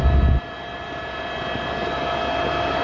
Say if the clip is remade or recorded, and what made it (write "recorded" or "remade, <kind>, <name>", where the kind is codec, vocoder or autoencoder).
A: recorded